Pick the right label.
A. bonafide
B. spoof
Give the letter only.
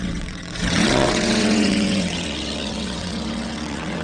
B